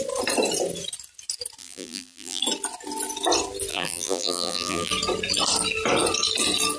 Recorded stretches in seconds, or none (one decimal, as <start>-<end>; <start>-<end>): 0.0-1.6; 2.4-3.7; 4.9-6.8